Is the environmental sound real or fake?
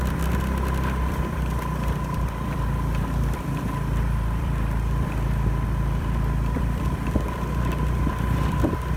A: fake